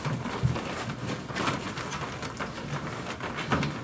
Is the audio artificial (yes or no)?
no